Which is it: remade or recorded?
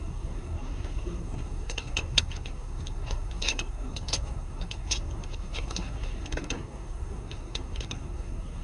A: remade